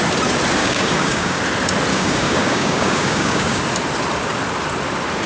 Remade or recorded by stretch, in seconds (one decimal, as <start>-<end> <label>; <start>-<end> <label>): 0.0-0.6 recorded; 0.6-1.4 remade; 1.4-1.9 recorded; 1.9-3.6 remade; 3.6-5.3 recorded